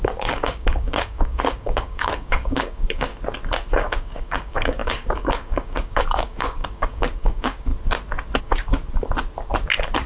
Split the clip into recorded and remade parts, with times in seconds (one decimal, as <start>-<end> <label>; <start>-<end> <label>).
0.0-3.1 remade; 3.1-3.7 recorded; 3.7-7.7 remade; 7.7-8.4 recorded; 8.4-8.8 remade; 8.8-10.1 recorded